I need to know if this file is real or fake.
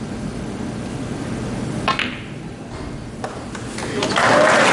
real